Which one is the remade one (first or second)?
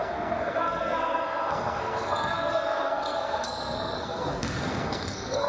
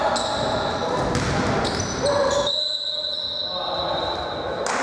first